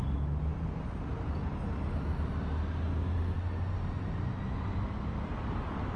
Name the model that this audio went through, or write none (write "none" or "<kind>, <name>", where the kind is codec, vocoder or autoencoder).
none